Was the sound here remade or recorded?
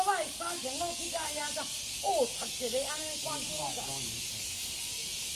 remade